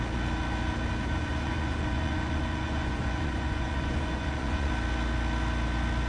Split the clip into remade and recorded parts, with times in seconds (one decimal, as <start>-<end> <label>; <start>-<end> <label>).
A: 0.0-1.0 recorded; 1.0-4.7 remade; 4.7-6.1 recorded